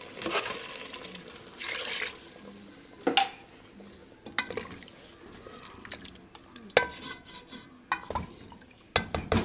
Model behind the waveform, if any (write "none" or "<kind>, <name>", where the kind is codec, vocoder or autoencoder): none